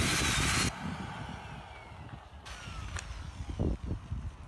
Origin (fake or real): real